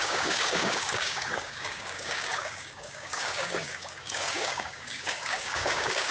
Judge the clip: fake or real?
fake